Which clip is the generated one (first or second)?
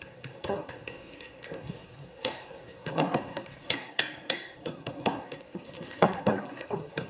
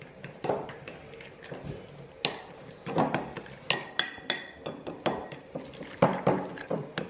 first